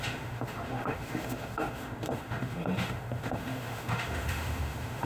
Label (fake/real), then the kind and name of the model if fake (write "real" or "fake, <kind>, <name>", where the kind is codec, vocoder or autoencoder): fake, autoencoder, DAC-VAE